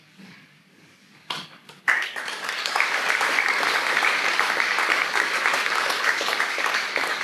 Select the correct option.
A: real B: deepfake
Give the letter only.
B